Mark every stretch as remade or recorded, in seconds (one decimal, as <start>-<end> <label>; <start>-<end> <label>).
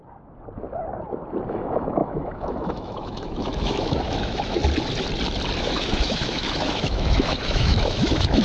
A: 0.0-1.5 recorded; 1.5-4.6 remade; 4.6-5.6 recorded; 5.6-8.4 remade